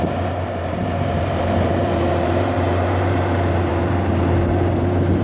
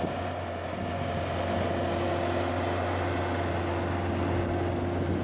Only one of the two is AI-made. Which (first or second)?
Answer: first